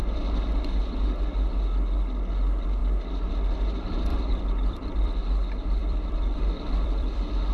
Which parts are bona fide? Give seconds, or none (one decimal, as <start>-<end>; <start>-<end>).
0.0-4.1; 5.2-5.8

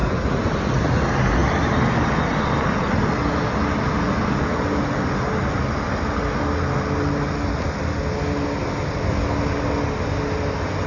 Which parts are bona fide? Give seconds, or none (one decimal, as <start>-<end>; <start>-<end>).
0.0-10.9

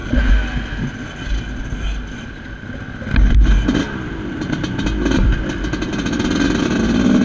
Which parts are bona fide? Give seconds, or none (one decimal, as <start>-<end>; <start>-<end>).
0.0-7.2

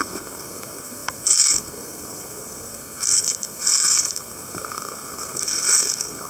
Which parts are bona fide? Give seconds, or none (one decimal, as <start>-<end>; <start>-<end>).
none

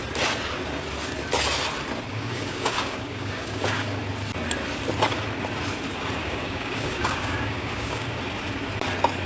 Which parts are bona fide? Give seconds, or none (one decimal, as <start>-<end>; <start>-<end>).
0.0-2.1; 4.0-6.2; 8.2-9.3